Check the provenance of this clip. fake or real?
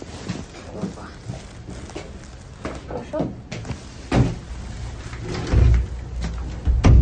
real